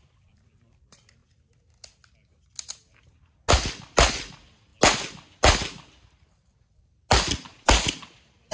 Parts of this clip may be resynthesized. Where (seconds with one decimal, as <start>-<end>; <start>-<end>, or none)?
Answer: 0.0-1.2; 3.5-4.7; 7.1-8.5